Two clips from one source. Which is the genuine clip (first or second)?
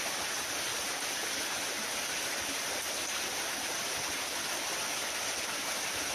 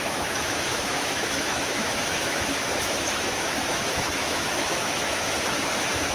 first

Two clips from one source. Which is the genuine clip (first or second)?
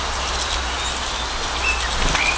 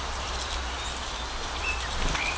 first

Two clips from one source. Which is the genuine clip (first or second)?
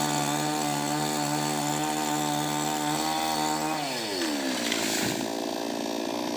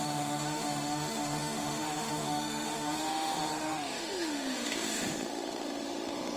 first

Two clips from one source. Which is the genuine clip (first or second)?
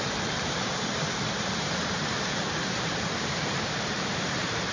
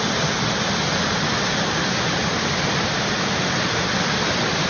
second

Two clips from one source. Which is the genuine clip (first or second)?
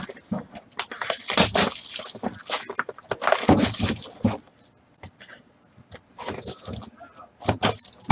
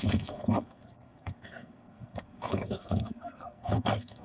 first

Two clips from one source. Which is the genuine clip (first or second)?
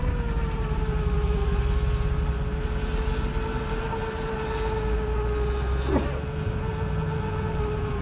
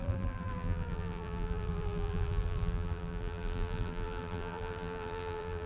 first